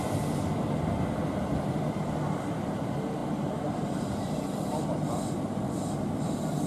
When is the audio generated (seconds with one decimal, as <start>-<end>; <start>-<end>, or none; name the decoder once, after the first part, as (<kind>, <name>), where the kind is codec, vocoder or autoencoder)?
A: none

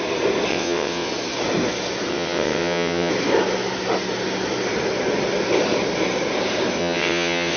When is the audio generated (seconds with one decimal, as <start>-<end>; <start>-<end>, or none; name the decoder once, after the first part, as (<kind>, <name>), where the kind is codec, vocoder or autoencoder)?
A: 0.5-1.1 (vocoder, WaveNeXt); 2.1-3.1; 6.8-7.6

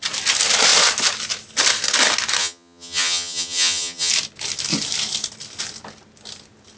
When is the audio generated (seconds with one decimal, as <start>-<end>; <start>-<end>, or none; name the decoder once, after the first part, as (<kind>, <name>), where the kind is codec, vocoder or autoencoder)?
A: 2.4-4.1 (vocoder, HiFi-GAN)

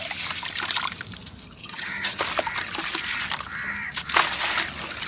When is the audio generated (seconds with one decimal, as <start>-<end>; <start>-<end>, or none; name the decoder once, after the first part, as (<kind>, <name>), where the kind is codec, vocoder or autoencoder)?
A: 1.6-2.2 (vocoder, HiFi-GAN)

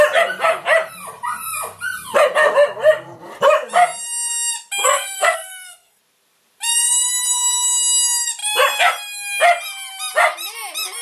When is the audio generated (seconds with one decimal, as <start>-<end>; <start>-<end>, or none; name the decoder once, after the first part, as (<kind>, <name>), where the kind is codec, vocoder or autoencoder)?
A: 4.8-6.0 (codec, SNAC)